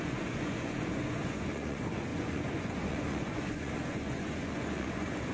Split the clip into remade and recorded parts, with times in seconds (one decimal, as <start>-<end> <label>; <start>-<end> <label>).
0.0-5.3 remade